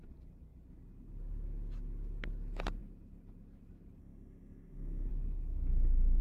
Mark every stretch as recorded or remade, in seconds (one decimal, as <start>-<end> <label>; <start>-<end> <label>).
0.0-4.0 recorded; 4.0-5.1 remade; 5.1-6.2 recorded